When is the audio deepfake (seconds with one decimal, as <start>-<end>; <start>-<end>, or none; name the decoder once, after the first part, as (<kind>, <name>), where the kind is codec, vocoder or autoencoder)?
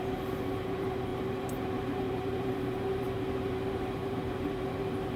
0.0-5.2 (vocoder, BigVGAN v2)